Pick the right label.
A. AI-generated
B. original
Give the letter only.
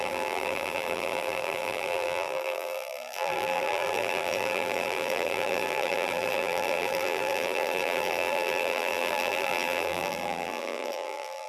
A